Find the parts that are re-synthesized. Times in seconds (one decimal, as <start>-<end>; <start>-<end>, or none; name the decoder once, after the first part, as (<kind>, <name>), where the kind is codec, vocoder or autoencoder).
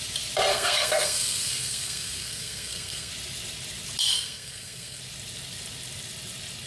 0.5-3.1 (codec, SNAC); 4.1-5.0